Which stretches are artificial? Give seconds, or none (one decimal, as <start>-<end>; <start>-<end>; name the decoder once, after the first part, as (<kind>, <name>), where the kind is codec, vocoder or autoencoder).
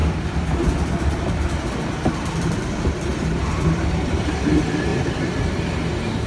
0.0-0.6 (vocoder, BigVGAN v2); 3.1-4.3; 4.9-5.5